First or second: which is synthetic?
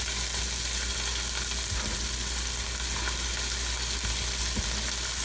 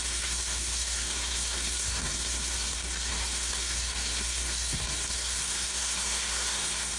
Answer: second